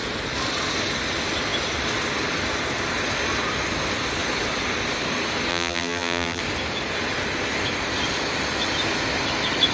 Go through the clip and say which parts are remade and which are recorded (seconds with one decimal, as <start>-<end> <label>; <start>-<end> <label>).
0.0-5.5 recorded; 5.5-6.4 remade; 6.4-9.7 recorded